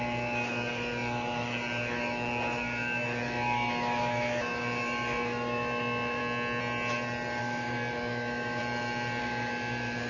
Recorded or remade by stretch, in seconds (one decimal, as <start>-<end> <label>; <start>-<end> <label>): 0.0-6.2 remade; 6.2-7.4 recorded; 7.4-8.6 remade; 8.6-9.2 recorded; 9.2-10.1 remade